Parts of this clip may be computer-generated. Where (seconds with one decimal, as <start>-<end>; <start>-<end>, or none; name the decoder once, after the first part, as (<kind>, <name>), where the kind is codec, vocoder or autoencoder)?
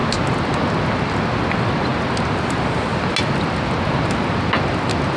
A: none